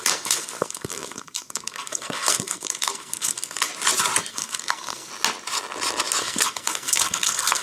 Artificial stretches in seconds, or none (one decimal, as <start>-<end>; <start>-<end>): 0.0-3.7; 4.3-5.1; 6.2-7.6